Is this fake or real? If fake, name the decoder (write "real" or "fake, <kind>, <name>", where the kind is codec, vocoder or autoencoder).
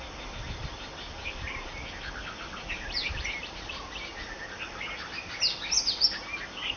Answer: real